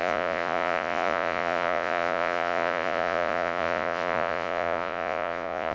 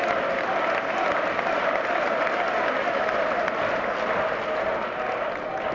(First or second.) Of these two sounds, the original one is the second